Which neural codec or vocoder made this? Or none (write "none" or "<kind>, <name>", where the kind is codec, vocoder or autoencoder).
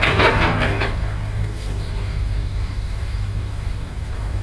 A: codec, DAC